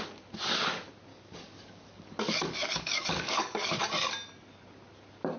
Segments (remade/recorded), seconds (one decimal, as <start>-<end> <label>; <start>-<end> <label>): 0.0-1.1 recorded; 1.1-3.8 remade; 3.8-5.4 recorded